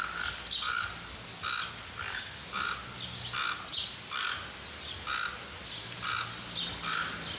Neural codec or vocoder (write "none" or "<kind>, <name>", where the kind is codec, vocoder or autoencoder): none